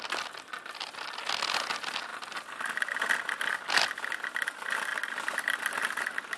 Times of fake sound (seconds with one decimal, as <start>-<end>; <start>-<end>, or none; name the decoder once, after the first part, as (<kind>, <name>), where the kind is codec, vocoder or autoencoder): none